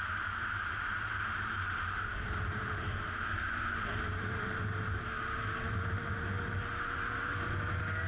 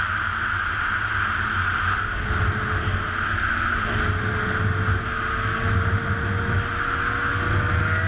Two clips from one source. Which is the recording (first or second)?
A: second